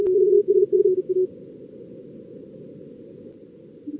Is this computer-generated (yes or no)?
no